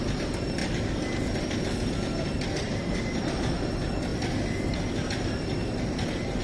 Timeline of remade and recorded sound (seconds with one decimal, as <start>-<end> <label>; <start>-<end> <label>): 0.0-0.6 remade; 0.6-3.2 recorded; 3.2-4.1 remade; 4.1-5.4 recorded; 5.4-6.4 remade